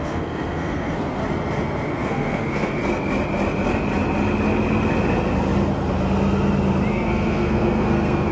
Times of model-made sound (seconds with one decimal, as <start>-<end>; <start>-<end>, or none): 0.0-1.2; 1.9-2.8; 6.9-8.3